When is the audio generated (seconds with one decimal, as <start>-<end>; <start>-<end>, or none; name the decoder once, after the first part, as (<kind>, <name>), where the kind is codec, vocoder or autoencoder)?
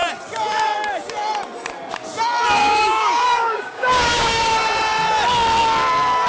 2.6-4.5 (codec, DAC)